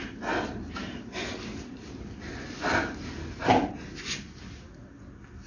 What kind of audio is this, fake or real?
real